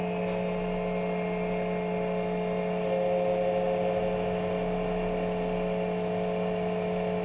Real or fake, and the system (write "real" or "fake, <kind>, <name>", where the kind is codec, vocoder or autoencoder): real